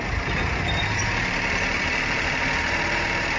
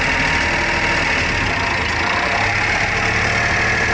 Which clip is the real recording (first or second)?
second